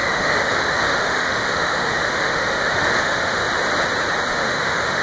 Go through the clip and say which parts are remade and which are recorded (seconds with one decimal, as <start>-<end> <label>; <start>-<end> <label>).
0.0-3.4 remade; 3.4-4.3 recorded; 4.3-5.0 remade